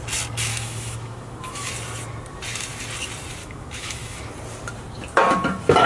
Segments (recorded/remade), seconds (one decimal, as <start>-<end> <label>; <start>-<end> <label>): 0.0-0.5 recorded; 0.5-1.7 remade; 1.7-3.4 recorded; 3.4-4.3 remade; 4.3-5.9 recorded